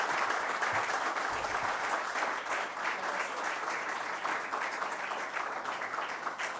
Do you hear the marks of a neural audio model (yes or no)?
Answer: no